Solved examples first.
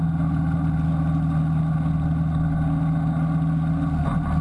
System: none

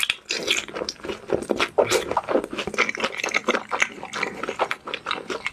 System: none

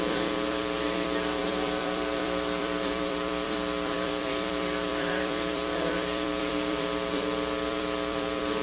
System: vocoder, BigVGAN v2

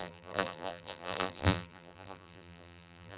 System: vocoder, BigVGAN v2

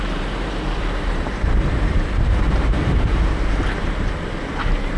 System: vocoder, BigVGAN v2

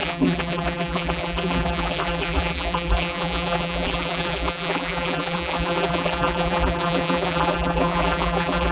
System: vocoder, BigVGAN v2